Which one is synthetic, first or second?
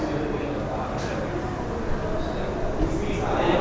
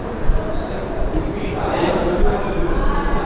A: second